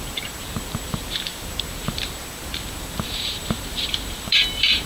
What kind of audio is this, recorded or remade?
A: remade